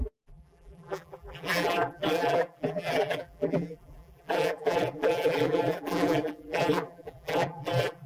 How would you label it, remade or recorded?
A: remade